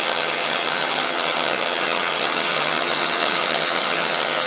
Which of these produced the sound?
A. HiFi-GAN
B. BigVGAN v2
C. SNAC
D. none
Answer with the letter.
A